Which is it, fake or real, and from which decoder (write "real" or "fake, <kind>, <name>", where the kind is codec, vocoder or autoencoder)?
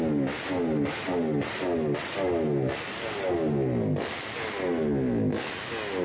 real